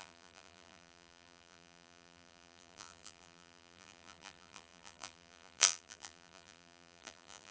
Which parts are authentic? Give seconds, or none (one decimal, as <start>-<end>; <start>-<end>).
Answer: none